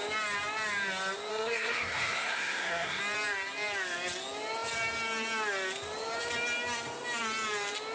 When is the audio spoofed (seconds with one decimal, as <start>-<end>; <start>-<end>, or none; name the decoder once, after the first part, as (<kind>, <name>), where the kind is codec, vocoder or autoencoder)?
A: 1.3-3.0 (codec, SNAC)